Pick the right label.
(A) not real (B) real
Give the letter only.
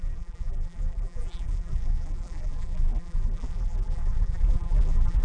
A